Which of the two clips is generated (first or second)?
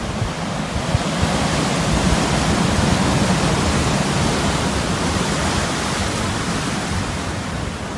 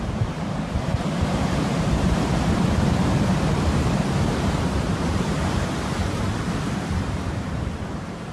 second